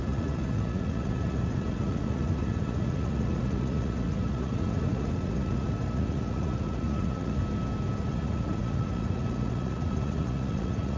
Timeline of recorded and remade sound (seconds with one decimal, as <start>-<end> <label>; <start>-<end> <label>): 0.0-7.4 remade; 7.4-8.0 recorded; 8.0-11.0 remade